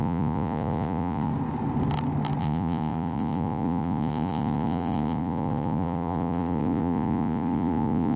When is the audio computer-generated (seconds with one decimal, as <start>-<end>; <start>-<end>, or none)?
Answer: 0.0-1.3; 2.4-8.2